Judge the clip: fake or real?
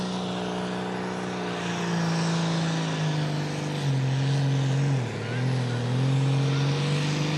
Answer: real